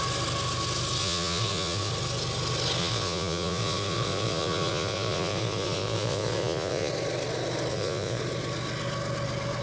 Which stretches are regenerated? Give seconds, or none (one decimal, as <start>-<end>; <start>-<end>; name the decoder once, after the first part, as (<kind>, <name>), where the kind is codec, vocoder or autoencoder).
1.0-1.9 (vocoder, Vocos); 2.8-6.9; 7.7-8.2